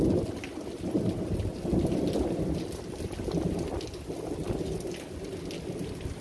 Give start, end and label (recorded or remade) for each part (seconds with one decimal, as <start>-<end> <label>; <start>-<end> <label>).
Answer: 0.0-6.2 recorded